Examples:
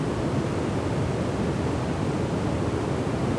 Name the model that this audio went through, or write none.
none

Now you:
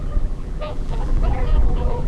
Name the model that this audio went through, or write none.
vocoder, BigVGAN v2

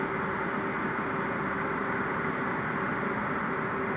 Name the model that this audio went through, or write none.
none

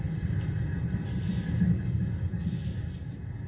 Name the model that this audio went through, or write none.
none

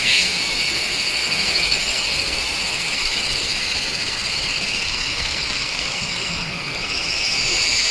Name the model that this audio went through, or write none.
codec, SNAC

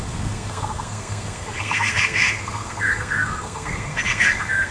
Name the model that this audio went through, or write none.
codec, SNAC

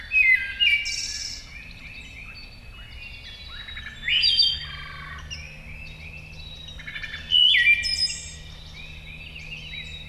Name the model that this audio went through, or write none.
none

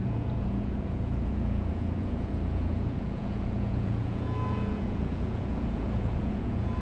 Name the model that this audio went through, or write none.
vocoder, Vocos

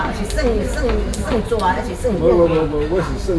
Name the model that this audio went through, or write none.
none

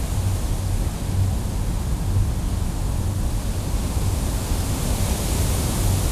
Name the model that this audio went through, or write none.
none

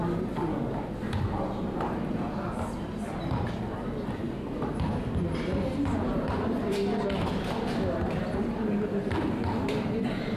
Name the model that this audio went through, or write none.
none